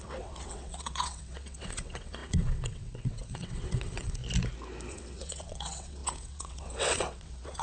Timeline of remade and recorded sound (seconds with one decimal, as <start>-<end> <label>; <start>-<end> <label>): 0.0-4.2 remade; 4.2-4.9 recorded; 4.9-7.6 remade